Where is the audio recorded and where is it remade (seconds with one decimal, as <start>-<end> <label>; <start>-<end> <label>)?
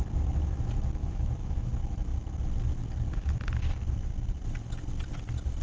0.0-1.0 recorded; 1.0-1.7 remade; 1.7-5.6 recorded